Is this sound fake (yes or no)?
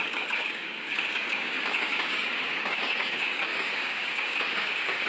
yes